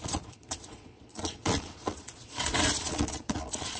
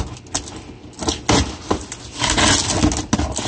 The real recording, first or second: second